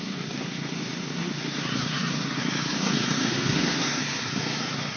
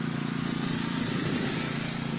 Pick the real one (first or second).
second